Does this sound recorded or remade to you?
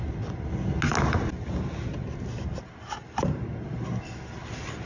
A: recorded